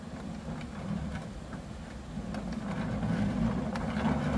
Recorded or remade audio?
recorded